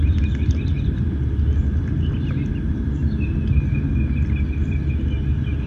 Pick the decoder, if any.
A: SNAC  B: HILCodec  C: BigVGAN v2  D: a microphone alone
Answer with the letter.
D